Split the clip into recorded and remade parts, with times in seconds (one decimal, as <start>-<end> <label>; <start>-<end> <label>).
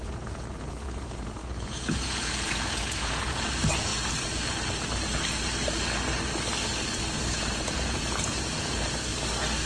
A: 0.0-3.9 remade; 3.9-7.2 recorded; 7.2-9.1 remade; 9.1-9.7 recorded